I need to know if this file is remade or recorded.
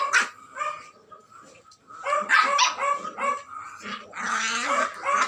recorded